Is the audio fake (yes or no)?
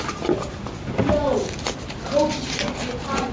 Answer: no